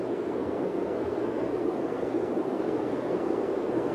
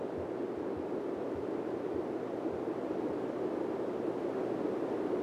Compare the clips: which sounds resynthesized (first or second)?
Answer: first